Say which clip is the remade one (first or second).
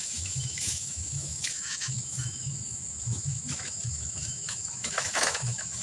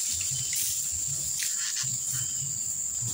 first